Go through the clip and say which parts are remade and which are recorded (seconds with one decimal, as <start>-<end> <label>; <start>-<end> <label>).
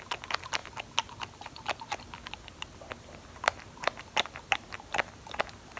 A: 0.0-5.8 recorded